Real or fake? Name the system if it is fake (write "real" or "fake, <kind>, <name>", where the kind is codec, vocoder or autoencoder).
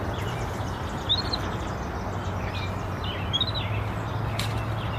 real